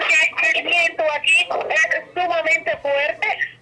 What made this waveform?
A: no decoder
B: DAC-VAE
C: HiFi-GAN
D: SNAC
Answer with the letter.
A